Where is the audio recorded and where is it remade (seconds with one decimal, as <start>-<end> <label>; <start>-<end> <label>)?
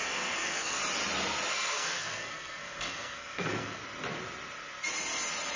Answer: 0.0-0.8 remade; 0.8-1.5 recorded; 1.5-3.8 remade; 3.8-5.6 recorded